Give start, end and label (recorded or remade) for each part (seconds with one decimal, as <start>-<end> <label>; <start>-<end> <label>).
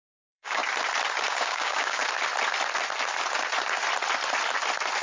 0.0-0.6 remade; 0.6-1.3 recorded; 1.3-2.0 remade; 2.0-5.0 recorded